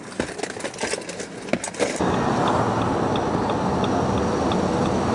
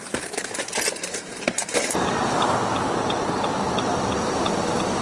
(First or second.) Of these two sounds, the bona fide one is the first